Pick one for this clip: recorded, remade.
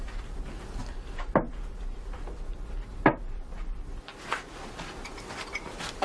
remade